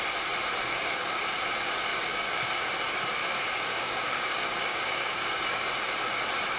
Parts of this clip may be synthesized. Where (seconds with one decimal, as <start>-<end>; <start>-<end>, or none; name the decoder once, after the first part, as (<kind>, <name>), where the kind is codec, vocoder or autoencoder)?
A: 0.6-1.2 (codec, DAC); 1.9-2.7; 3.2-5.7